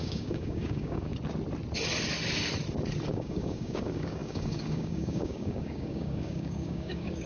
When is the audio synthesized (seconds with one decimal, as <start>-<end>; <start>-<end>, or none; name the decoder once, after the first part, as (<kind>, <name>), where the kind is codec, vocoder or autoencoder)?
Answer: 0.0-1.1 (codec, DAC); 3.1-7.3